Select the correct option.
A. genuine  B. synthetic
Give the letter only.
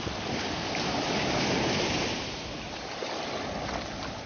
B